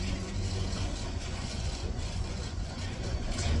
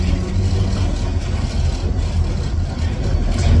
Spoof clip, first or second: first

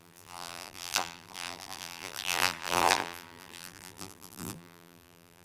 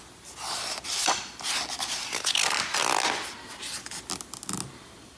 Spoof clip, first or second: first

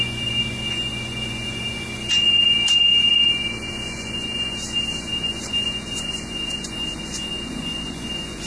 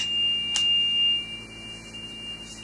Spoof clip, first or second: first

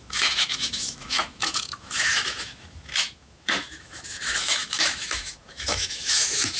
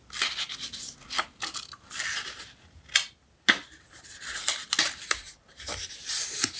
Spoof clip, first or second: first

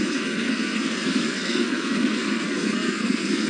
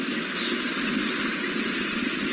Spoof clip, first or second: first